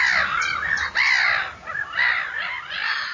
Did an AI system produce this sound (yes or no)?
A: no